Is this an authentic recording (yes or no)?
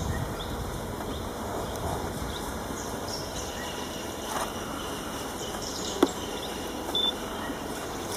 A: no